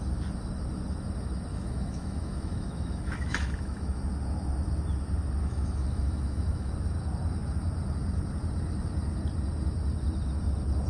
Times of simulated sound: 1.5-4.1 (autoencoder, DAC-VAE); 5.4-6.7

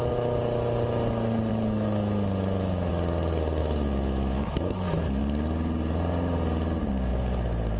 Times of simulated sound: 1.5-2.9 (autoencoder, DAC-VAE); 3.6-5.2

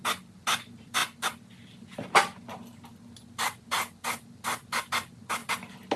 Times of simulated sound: none

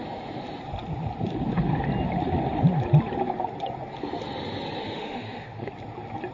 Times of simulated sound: 4.8-5.7 (autoencoder, DAC-VAE)

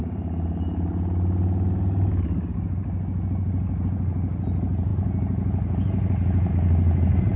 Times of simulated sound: none

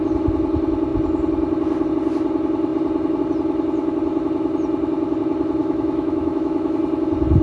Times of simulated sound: 5.6-6.8 (autoencoder, DAC-VAE)

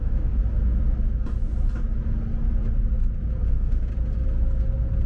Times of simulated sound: 0.0-0.4 (autoencoder, DAC-VAE); 3.5-3.9

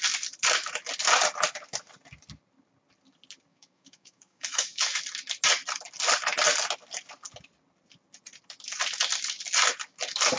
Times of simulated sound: 3.5-5.0 (autoencoder, DAC-VAE)